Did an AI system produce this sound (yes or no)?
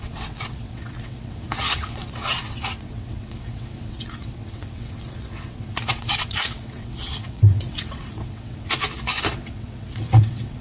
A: yes